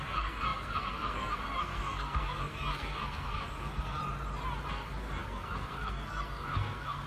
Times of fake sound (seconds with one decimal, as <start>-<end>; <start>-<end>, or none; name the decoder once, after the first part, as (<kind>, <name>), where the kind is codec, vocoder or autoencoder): 0.0-4.0 (codec, SNAC); 4.7-7.1